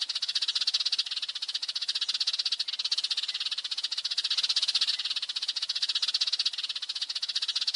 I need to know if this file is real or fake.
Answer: real